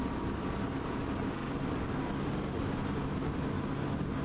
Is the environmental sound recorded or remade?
recorded